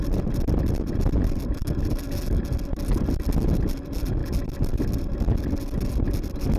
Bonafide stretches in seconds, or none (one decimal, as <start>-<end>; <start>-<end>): 0.0-6.6